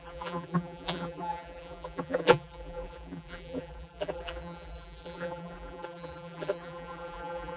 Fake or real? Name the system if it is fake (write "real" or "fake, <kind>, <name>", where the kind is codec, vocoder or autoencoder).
fake, vocoder, BigVGAN v2